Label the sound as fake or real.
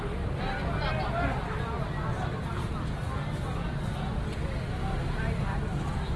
real